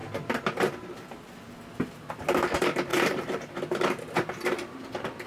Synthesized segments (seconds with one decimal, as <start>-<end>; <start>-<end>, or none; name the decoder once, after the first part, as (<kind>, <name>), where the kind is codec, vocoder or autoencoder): 2.9-4.8 (vocoder, BigVGAN v2)